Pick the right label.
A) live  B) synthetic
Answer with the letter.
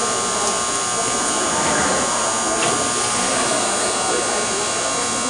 A